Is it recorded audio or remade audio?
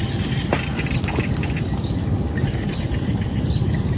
recorded